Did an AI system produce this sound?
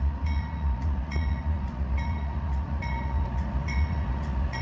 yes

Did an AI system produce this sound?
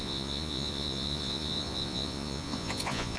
yes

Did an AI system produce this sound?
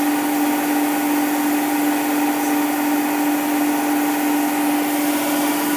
no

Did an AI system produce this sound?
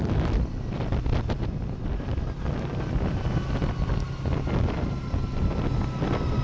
no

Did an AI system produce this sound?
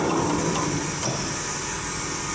no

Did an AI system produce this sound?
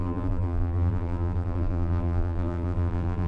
yes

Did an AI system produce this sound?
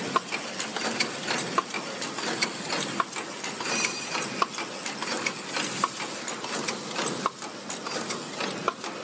no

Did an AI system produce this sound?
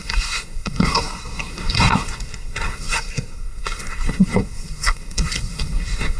yes